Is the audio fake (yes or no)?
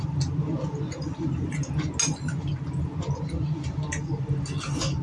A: no